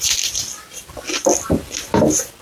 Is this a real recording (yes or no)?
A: yes